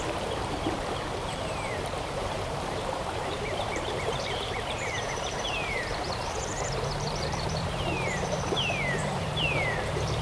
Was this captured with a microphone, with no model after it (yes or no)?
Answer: no